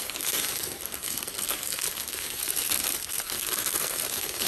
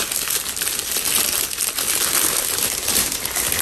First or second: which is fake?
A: first